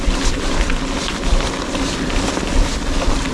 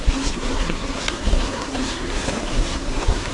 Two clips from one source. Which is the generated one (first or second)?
second